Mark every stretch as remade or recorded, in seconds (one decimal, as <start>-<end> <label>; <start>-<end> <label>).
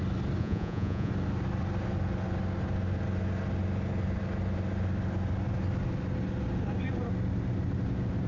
0.0-0.4 recorded; 0.4-1.1 remade; 1.1-8.3 recorded